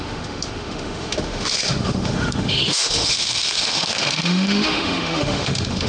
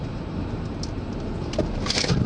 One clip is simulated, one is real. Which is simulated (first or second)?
first